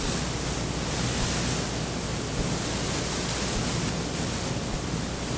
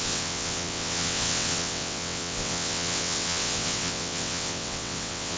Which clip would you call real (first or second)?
first